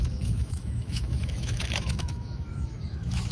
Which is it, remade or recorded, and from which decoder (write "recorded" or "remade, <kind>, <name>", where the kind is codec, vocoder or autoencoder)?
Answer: remade, autoencoder, DAC-VAE